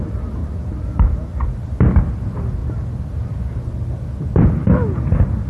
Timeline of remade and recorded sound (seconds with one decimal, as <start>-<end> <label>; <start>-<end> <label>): 0.0-0.4 recorded; 0.4-1.5 remade; 1.5-5.5 recorded